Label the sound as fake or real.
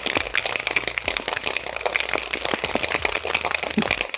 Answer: real